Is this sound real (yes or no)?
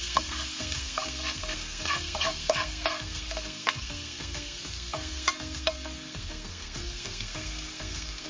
no